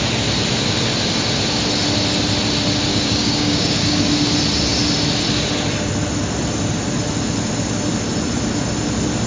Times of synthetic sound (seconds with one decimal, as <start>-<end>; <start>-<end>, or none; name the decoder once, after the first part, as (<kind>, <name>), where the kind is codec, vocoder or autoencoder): 2.9-4.1 (codec, DAC)